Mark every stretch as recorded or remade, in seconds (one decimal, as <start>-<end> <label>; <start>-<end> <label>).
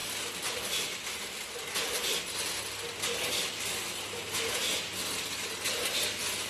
0.0-6.5 recorded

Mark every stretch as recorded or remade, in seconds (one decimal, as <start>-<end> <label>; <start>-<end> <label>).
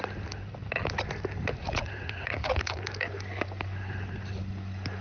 0.0-1.6 recorded; 1.6-2.8 remade; 2.8-5.0 recorded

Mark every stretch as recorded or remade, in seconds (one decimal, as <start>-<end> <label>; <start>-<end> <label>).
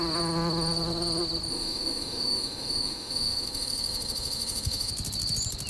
0.0-1.5 recorded; 1.5-4.9 remade; 4.9-5.7 recorded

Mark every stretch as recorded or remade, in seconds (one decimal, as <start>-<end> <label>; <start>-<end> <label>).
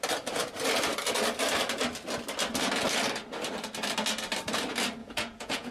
0.0-5.0 recorded; 5.0-5.7 remade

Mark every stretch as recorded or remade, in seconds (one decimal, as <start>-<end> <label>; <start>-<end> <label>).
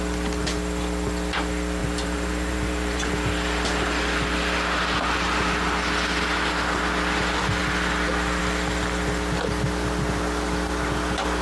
0.0-1.8 recorded; 1.8-3.1 remade; 3.1-11.4 recorded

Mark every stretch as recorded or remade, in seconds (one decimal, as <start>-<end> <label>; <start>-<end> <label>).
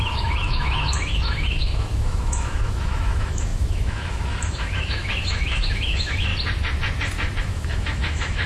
0.0-6.3 remade; 6.3-7.4 recorded; 7.4-8.5 remade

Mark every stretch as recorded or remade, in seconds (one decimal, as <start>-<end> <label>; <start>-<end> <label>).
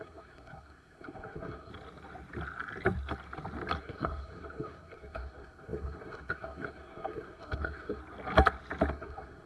0.0-1.7 remade; 1.7-3.8 recorded; 3.8-8.0 remade; 8.0-8.9 recorded; 8.9-9.5 remade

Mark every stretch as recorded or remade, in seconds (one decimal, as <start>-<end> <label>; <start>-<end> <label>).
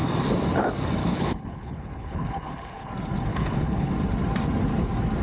0.0-1.0 recorded; 1.0-2.9 remade; 2.9-3.3 recorded; 3.3-3.9 remade; 3.9-5.2 recorded